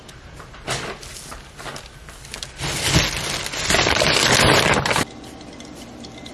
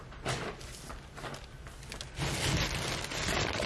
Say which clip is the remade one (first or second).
first